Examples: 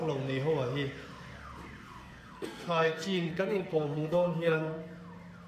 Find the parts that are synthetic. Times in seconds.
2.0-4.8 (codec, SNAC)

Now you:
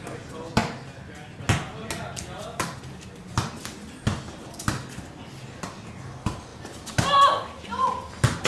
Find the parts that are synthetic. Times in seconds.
none